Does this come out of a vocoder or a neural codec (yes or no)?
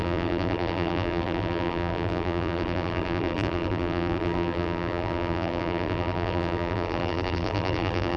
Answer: yes